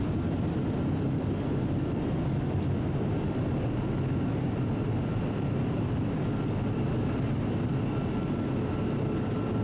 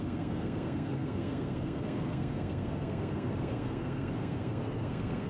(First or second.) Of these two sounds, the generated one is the second